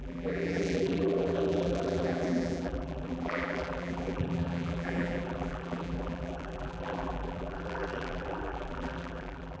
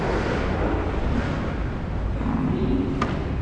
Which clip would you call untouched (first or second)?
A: second